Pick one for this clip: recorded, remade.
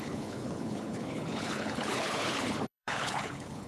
remade